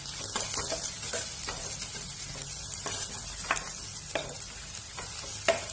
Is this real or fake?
real